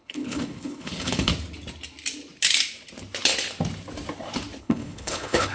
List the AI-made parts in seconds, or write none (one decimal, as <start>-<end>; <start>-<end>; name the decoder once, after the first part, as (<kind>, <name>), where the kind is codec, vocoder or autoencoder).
0.0-1.3 (codec, HILCodec); 4.6-5.5